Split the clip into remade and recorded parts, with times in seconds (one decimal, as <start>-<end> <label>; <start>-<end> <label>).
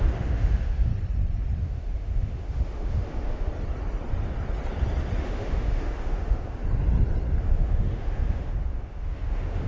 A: 0.0-0.9 remade; 0.9-1.6 recorded; 1.6-3.5 remade; 3.5-5.2 recorded; 5.2-6.6 remade; 6.6-7.4 recorded; 7.4-9.7 remade